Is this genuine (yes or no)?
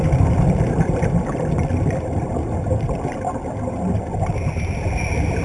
yes